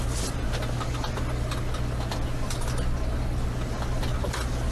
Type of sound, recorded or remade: recorded